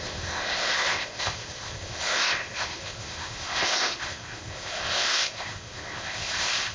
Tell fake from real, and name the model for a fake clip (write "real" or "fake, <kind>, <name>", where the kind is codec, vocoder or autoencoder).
fake, codec, ZipCodec